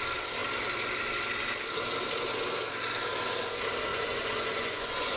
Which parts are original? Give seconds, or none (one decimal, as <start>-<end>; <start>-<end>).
0.0-3.9